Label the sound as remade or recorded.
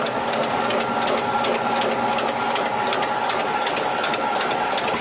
remade